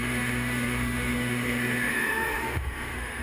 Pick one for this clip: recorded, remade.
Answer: remade